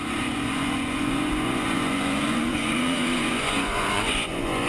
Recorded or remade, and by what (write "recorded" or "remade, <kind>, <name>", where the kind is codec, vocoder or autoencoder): remade, vocoder, Vocos